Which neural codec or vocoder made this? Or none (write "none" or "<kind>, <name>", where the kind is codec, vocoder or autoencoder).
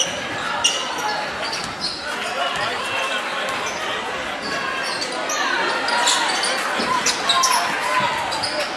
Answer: none